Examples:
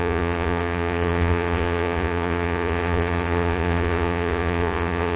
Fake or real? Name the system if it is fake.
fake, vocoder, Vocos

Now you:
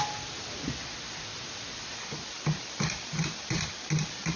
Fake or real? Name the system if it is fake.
real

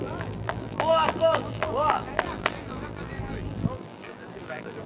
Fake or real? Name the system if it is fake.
fake, vocoder, BigVGAN v2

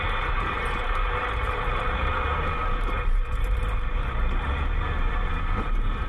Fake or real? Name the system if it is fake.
fake, vocoder, BigVGAN v2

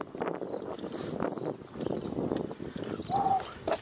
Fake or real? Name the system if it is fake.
real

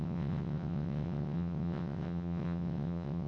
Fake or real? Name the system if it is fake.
fake, vocoder, WaveNeXt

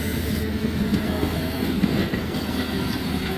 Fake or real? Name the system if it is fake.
fake, codec, SNAC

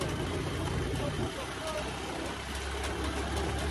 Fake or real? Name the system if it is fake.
real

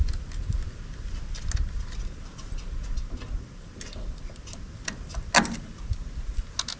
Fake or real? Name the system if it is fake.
real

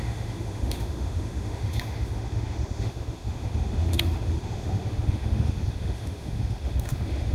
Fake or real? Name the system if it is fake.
fake, autoencoder, DAC-VAE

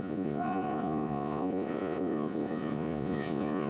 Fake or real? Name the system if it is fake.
fake, vocoder, Vocos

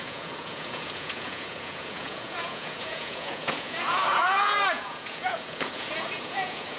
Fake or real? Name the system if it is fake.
fake, vocoder, Vocos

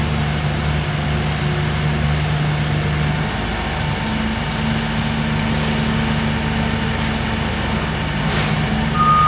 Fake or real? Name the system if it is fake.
real